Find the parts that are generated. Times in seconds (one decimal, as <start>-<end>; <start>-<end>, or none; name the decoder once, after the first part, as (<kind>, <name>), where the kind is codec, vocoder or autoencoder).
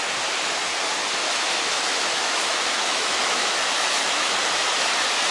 1.2-4.3 (autoencoder, DAC-VAE)